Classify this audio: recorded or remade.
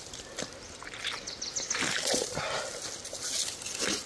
recorded